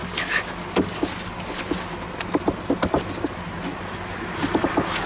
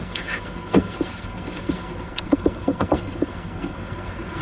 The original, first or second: first